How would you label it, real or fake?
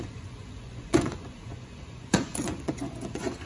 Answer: fake